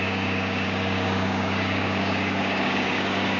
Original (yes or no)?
no